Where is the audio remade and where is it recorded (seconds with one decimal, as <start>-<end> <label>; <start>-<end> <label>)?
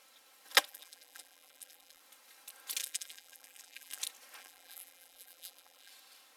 0.0-0.7 recorded; 0.7-2.0 remade; 2.0-2.8 recorded; 2.8-4.0 remade; 4.0-4.4 recorded; 4.4-5.9 remade; 5.9-6.4 recorded